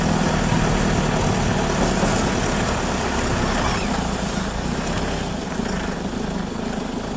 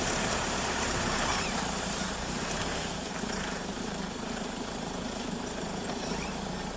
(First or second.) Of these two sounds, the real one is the first